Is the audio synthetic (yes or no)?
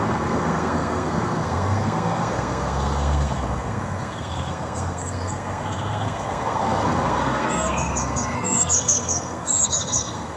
yes